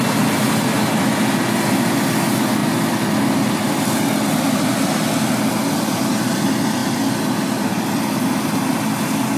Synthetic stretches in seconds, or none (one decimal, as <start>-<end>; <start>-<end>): 6.8-8.2